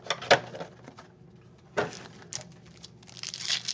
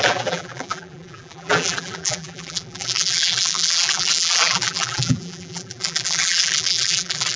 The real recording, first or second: first